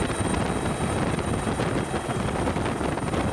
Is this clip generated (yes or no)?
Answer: no